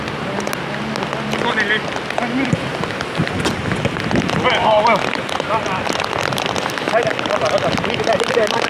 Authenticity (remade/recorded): recorded